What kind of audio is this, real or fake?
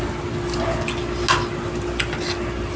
real